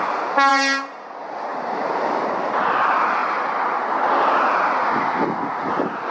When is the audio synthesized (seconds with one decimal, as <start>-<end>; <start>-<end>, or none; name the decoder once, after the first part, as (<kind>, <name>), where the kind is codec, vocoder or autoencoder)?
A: 0.5-1.1 (vocoder, BigVGAN v2); 1.5-2.6; 3.2-4.1